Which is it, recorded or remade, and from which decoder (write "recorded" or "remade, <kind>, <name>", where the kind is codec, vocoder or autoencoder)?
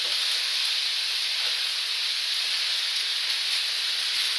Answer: recorded